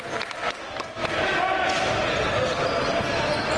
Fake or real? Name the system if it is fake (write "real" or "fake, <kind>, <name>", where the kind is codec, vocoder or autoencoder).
real